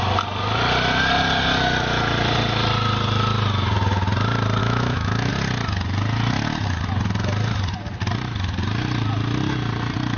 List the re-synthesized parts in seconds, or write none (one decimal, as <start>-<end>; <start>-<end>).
4.6-5.3